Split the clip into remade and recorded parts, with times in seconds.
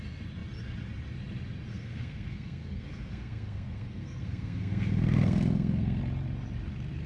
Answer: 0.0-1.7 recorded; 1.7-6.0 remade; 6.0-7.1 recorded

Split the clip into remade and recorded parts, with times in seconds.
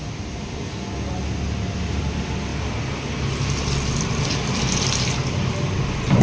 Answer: 0.0-6.2 recorded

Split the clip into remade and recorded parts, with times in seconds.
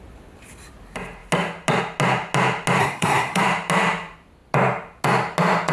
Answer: 0.0-2.8 recorded; 2.8-3.4 remade; 3.4-5.7 recorded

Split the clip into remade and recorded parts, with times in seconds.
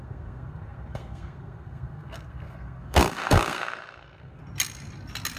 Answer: 0.0-4.4 remade; 4.4-5.4 recorded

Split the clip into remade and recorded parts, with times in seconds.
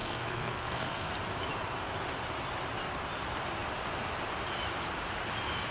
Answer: 0.0-1.1 remade; 1.1-5.7 recorded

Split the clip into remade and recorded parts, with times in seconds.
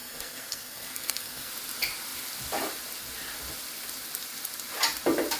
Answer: 0.0-1.5 remade; 1.5-5.4 recorded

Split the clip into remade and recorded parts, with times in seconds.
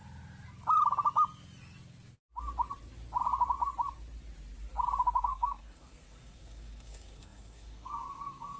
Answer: 0.0-5.2 recorded; 5.2-8.6 remade